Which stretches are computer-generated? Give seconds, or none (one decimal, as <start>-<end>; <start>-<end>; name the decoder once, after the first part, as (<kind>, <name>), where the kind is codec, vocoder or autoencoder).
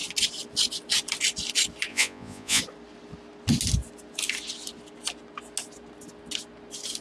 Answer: 1.9-2.6 (vocoder, Vocos)